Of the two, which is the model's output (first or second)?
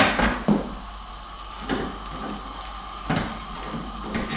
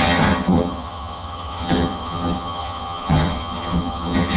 second